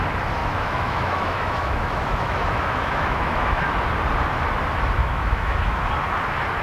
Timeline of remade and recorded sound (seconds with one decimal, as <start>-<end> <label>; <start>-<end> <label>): 0.0-0.4 recorded; 0.4-3.7 remade; 3.7-5.0 recorded; 5.0-5.9 remade; 5.9-6.6 recorded